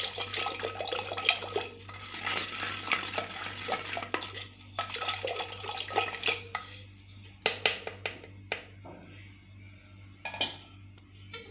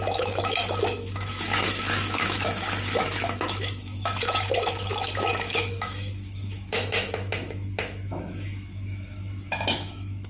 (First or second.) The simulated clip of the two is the second